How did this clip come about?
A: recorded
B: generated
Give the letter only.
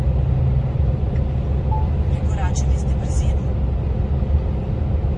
A